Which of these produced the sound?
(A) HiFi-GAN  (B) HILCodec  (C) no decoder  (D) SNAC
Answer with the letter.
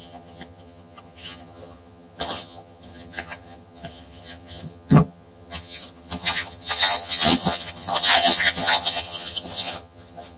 A